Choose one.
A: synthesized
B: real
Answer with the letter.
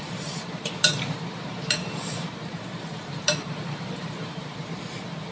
A